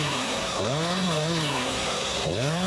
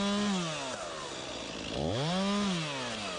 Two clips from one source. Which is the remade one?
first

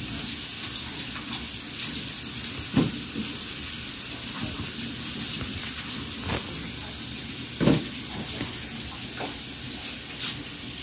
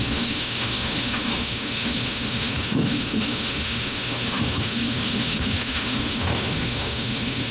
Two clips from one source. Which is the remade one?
second